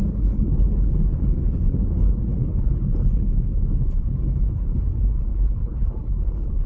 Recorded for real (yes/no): no